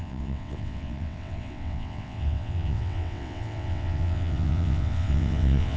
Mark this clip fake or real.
fake